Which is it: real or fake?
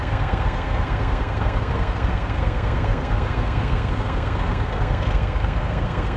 fake